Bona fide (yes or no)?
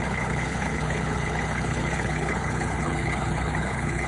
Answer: no